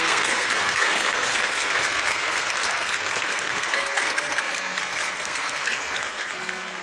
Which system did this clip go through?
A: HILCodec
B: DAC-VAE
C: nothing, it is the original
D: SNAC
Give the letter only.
D